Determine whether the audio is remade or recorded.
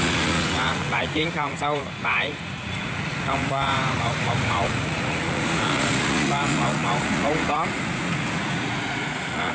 remade